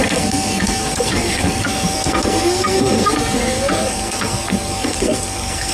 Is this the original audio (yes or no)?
no